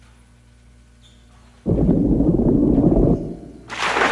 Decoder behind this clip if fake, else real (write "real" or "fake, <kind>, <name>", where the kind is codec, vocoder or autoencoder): real